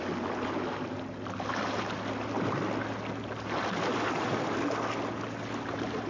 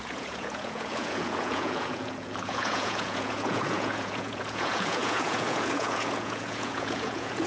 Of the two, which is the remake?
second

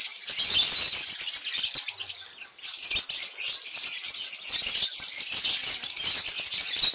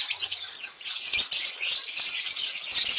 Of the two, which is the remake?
second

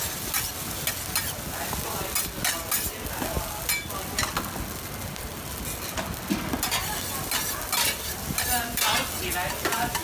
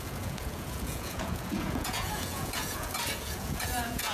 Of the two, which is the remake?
second